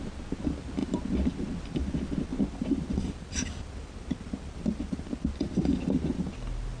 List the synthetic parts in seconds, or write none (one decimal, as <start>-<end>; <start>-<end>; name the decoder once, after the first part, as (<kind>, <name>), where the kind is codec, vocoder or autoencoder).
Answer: 0.8-1.9 (vocoder, BigVGAN v2); 2.3-6.3